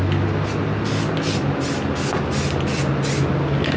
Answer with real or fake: real